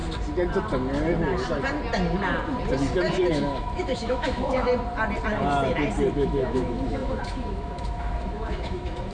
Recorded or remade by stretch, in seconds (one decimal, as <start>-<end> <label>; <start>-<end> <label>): 0.0-3.3 recorded; 3.3-4.7 remade; 4.7-6.1 recorded; 6.1-9.1 remade